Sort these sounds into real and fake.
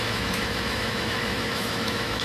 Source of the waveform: fake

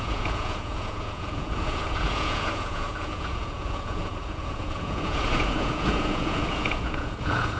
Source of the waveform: fake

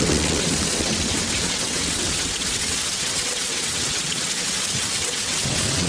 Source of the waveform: fake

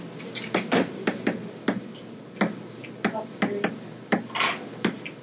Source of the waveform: real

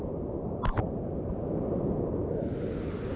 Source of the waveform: real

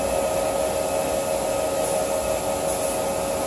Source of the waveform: real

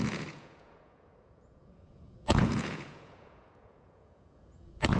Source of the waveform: fake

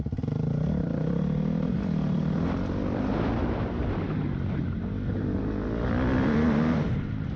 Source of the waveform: real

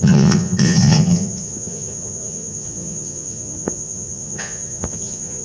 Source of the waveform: fake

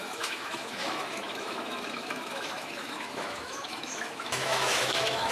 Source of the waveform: fake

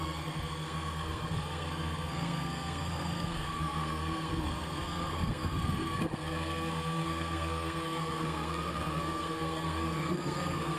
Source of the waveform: fake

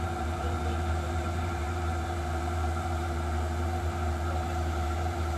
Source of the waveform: fake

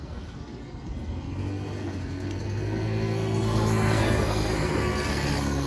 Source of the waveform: fake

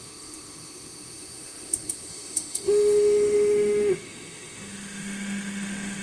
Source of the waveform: fake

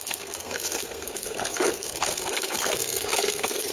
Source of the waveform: fake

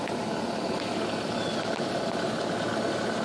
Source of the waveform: real